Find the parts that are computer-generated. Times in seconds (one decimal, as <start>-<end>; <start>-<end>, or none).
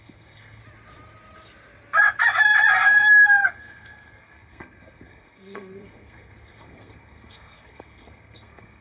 0.0-0.6; 2.7-8.8